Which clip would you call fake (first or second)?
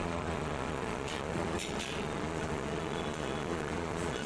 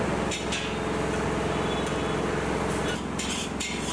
first